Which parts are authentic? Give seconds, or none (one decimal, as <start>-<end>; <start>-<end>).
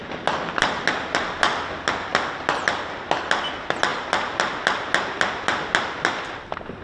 0.0-6.8